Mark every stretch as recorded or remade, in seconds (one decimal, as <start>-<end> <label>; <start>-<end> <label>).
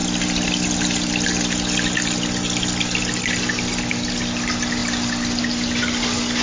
0.0-6.4 recorded